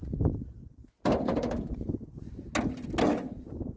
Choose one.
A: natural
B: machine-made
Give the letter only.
A